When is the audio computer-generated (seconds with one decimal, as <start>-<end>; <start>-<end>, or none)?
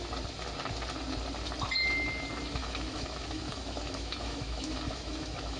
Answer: 2.6-5.6